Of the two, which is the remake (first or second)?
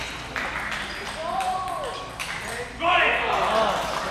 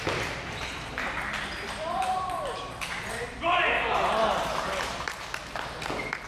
second